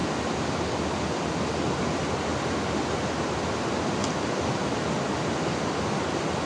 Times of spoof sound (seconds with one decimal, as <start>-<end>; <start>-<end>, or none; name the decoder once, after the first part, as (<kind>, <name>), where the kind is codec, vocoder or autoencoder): none